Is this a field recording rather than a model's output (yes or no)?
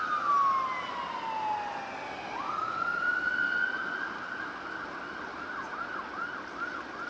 yes